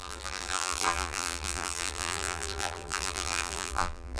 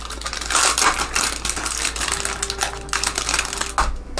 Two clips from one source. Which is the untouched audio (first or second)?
second